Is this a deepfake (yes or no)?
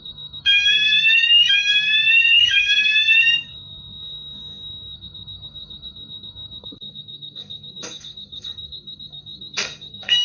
yes